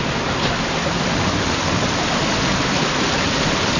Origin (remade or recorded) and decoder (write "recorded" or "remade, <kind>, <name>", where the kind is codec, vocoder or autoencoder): recorded